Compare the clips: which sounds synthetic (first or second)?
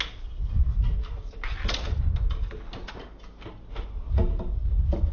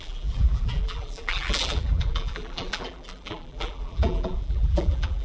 second